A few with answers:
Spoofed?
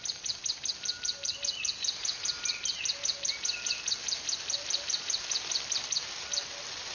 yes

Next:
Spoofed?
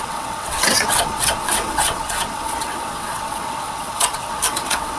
yes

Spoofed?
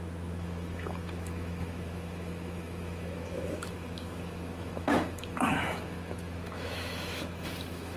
yes